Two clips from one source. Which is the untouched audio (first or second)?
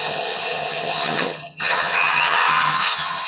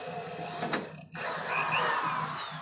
second